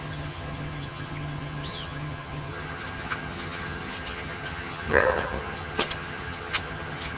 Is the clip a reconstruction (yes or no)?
yes